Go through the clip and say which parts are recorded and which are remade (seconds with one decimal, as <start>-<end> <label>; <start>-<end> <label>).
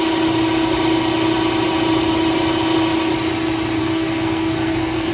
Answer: 0.0-3.8 recorded; 3.8-5.1 remade